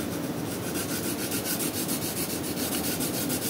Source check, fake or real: real